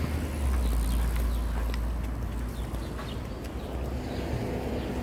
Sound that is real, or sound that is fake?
real